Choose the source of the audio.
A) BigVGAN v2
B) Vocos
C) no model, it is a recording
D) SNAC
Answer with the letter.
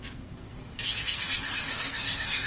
D